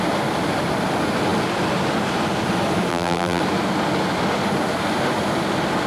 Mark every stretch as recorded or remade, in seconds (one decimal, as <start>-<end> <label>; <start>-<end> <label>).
0.0-2.9 recorded; 2.9-3.4 remade; 3.4-5.9 recorded